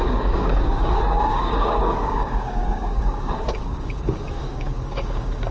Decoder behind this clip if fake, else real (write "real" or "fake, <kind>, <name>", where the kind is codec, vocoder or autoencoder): fake, codec, DAC